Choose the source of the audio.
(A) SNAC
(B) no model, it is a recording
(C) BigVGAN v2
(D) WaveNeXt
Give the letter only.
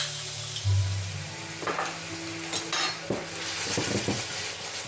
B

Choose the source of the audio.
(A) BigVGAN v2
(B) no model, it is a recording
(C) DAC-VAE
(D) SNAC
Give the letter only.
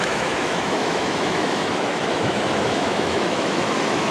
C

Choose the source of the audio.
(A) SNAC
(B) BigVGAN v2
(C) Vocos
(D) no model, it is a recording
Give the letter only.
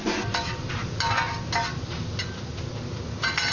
D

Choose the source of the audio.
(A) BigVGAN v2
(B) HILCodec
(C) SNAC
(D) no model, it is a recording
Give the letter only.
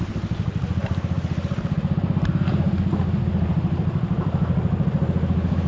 D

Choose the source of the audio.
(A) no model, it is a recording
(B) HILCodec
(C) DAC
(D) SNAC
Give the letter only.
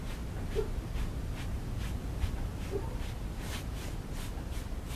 A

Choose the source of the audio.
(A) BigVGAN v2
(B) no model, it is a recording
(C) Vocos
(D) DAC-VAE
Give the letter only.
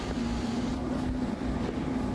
A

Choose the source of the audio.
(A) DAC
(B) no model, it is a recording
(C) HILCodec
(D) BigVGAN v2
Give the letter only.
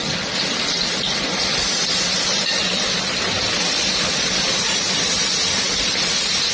D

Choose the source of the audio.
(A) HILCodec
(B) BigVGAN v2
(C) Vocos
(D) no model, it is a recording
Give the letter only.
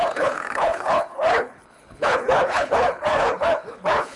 A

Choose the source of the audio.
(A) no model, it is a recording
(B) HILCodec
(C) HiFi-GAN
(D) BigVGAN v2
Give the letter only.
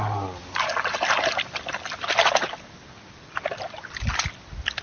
A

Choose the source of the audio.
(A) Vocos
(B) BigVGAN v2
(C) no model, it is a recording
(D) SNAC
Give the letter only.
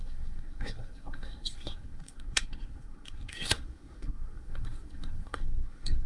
D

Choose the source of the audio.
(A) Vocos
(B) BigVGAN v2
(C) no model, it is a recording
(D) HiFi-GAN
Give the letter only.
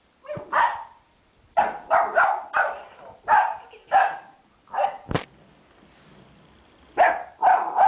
C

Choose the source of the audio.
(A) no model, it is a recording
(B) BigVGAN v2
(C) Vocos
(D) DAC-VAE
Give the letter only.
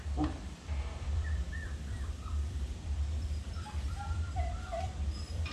B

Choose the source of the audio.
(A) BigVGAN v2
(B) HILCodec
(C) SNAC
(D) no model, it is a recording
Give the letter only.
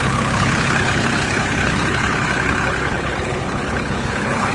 B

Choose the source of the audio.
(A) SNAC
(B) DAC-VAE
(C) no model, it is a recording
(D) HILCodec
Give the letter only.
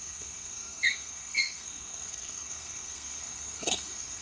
A